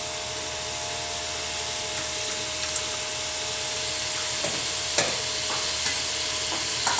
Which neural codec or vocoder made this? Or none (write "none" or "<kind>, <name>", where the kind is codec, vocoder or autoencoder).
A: none